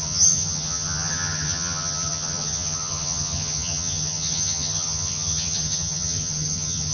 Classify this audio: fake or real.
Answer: fake